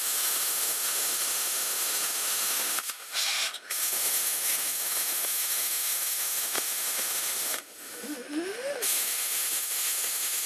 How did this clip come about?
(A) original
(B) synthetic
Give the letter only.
B